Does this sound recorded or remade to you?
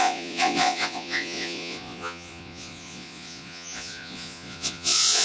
remade